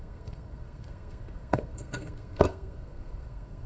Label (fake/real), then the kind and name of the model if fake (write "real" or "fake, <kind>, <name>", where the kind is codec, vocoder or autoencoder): fake, codec, SNAC